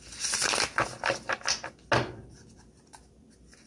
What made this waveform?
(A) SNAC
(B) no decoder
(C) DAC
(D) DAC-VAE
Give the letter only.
B